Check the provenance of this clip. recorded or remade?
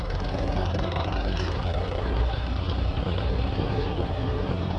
remade